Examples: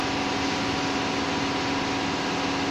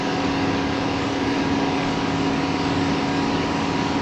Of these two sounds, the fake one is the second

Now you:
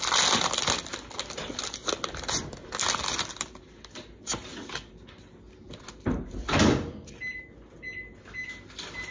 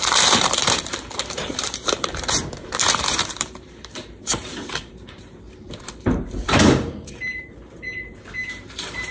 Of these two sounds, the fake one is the second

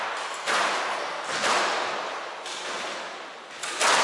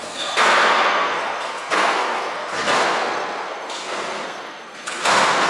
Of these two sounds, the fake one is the second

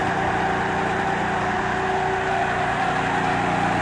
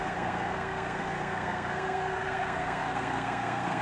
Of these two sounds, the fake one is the second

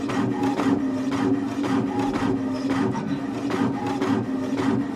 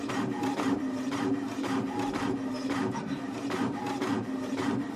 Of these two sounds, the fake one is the second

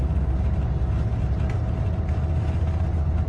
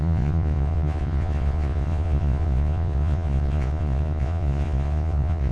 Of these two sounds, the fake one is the second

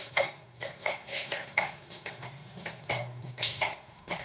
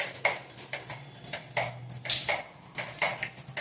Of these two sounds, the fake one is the first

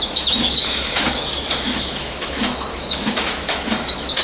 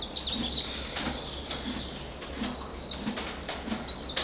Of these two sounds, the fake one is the first